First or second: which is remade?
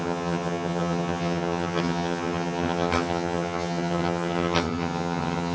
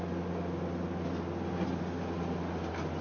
first